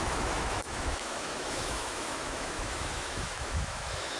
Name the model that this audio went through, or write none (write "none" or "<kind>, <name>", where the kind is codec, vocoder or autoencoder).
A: autoencoder, DAC-VAE